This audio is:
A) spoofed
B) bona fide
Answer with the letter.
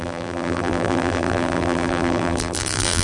A